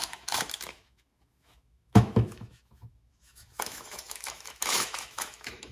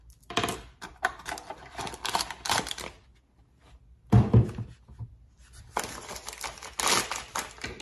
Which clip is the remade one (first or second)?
first